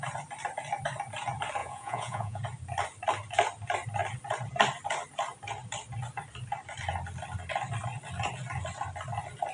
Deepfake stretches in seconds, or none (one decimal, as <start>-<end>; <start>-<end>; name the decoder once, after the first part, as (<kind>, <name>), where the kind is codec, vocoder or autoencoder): 1.6-2.4 (vocoder, Vocos)